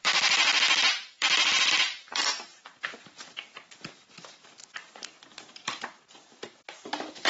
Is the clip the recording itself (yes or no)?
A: no